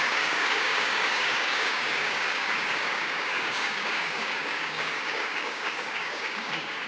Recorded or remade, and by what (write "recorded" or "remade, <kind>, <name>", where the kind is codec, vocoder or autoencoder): remade, codec, DAC